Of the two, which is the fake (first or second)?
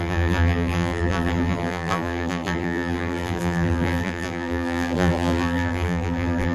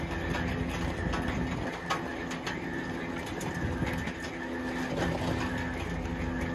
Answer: first